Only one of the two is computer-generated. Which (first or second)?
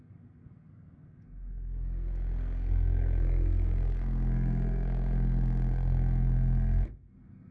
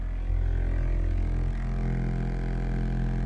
first